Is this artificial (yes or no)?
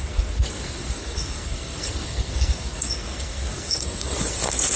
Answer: yes